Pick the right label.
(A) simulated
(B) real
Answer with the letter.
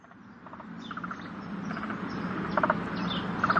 B